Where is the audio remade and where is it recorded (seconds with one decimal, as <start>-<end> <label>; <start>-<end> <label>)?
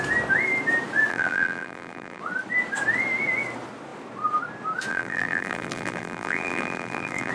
0.0-1.1 recorded; 1.1-2.2 remade; 2.2-4.9 recorded; 4.9-7.3 remade